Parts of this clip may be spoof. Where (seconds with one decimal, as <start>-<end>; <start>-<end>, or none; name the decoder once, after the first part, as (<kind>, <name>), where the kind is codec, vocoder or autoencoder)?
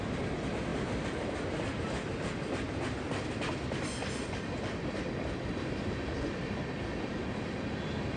none